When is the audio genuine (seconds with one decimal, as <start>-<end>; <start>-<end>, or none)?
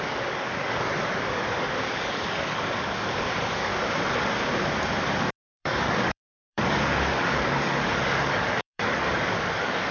3.7-5.3